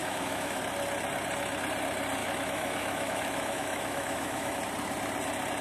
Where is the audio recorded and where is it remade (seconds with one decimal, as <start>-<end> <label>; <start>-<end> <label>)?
0.0-0.6 remade; 0.6-2.2 recorded; 2.2-4.6 remade; 4.6-5.6 recorded